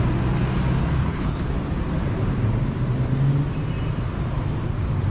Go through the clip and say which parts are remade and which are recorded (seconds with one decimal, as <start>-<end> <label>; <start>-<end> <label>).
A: 0.0-1.0 recorded; 1.0-1.5 remade; 1.5-5.1 recorded